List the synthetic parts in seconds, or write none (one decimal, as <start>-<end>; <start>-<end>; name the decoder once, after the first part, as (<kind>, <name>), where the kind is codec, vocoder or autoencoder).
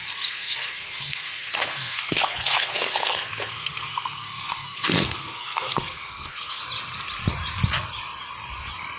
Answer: 0.0-6.6 (codec, SNAC)